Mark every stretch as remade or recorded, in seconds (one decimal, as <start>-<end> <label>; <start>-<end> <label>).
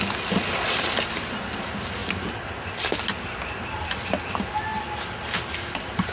0.0-6.1 recorded